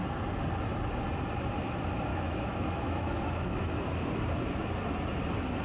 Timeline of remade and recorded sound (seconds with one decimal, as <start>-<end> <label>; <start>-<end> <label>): 0.0-2.1 recorded; 2.1-3.7 remade; 3.7-5.6 recorded